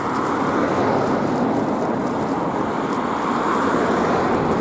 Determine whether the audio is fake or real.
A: real